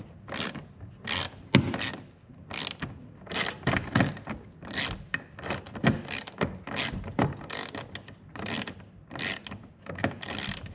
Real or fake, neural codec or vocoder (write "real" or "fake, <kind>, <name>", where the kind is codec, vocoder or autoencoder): real